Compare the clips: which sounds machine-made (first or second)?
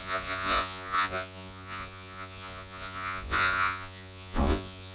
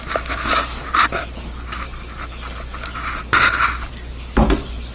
first